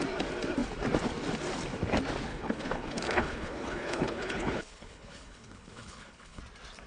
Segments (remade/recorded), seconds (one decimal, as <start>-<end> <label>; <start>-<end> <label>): 0.0-2.3 recorded; 2.3-6.4 remade; 6.4-6.9 recorded